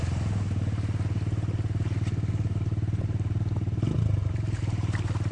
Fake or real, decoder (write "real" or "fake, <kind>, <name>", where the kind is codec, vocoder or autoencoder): real